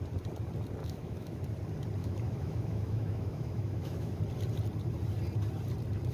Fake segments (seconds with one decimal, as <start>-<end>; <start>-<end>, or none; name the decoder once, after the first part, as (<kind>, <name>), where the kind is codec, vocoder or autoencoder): 0.8-1.4 (autoencoder, DAC-VAE); 2.0-4.2